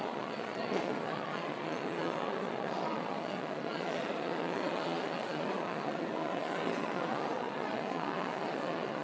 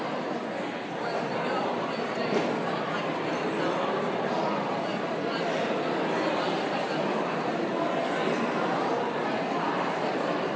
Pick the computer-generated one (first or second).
first